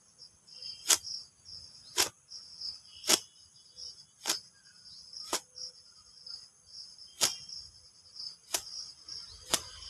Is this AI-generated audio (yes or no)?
no